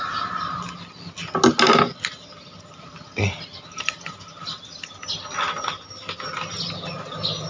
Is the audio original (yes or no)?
yes